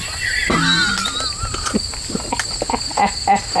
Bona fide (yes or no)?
yes